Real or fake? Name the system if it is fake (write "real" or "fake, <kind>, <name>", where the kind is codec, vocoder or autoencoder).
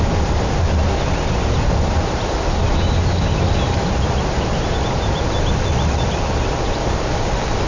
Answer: real